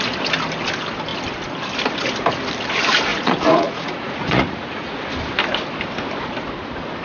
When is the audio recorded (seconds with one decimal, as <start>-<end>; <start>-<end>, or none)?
0.0-3.1; 5.1-7.0